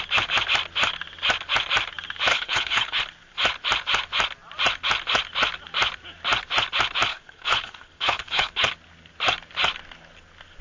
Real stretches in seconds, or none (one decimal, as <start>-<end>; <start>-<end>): 0.0-2.3; 3.0-7.1; 8.7-10.6